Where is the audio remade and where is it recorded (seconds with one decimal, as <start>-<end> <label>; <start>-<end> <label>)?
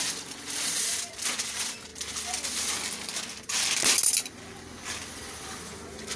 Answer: 0.0-6.2 recorded